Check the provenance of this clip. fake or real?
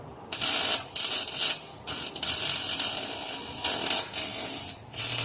real